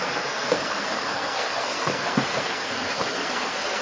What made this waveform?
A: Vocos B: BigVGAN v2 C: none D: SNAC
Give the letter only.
D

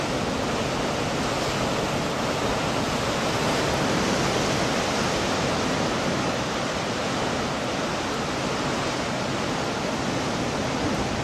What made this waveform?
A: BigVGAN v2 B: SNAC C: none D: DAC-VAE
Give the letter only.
C